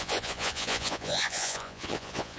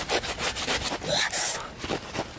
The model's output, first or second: first